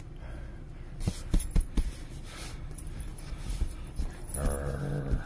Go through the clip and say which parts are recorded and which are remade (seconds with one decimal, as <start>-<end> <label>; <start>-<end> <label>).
0.0-5.3 recorded